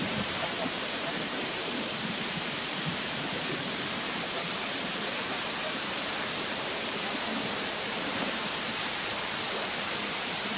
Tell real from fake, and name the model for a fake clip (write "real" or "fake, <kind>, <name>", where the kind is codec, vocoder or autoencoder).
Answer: fake, vocoder, BigVGAN v2